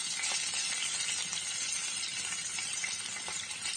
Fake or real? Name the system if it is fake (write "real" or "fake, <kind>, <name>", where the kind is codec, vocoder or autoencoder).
real